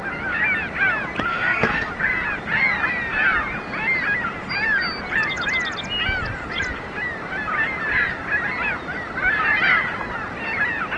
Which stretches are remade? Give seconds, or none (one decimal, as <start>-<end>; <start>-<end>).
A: 1.3-1.9